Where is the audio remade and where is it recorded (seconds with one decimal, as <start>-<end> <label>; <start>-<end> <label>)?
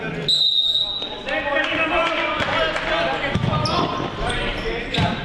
0.0-5.2 recorded